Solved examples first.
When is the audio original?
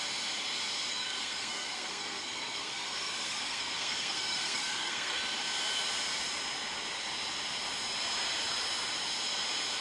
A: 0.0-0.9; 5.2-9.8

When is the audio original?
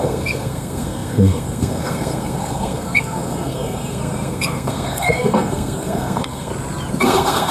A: 6.5-7.0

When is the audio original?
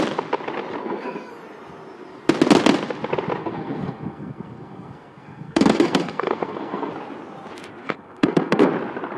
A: 0.0-0.8; 1.3-3.4; 6.9-7.8; 8.7-9.2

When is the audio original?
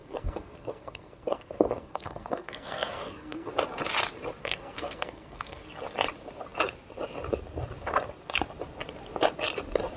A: 3.5-4.4; 5.6-10.0